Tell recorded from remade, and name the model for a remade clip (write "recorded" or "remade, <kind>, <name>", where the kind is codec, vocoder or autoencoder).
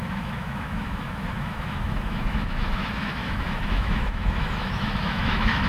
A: remade, autoencoder, DAC-VAE